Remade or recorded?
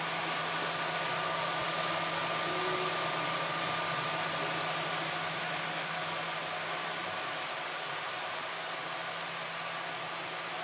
recorded